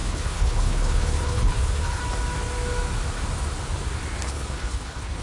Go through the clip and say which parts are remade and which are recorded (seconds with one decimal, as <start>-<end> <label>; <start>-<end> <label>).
0.0-2.0 remade; 2.0-4.3 recorded; 4.3-5.2 remade